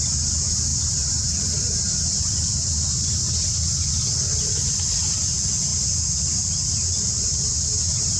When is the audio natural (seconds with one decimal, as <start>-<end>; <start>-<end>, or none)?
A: 0.0-0.7; 3.9-8.2